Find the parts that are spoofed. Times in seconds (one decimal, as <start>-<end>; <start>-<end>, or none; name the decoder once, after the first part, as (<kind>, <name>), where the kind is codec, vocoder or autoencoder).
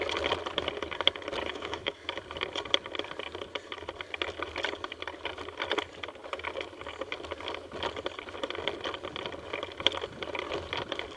1.5-2.2 (autoencoder, DAC-VAE)